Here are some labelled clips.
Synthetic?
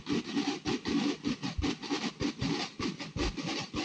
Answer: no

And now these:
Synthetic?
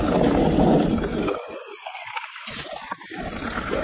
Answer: no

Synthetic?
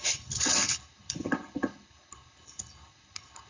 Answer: yes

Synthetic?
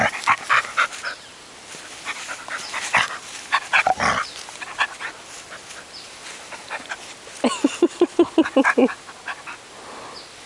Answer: no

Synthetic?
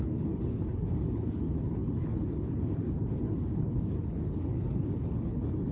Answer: yes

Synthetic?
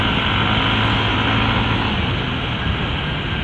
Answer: no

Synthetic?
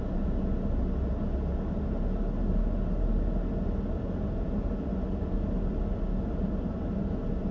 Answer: no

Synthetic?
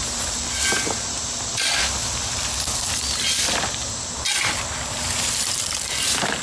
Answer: no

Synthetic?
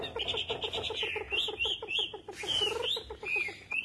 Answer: no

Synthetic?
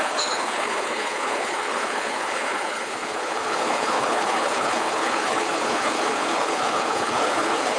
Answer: yes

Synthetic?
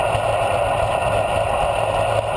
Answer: no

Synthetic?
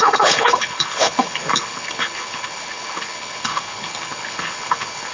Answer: yes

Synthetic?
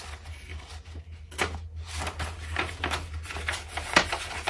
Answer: no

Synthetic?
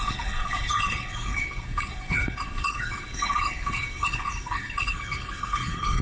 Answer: yes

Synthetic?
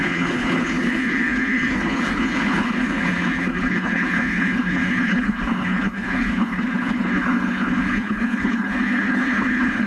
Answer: yes